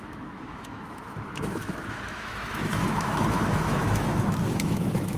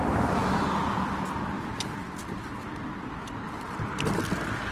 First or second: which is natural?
second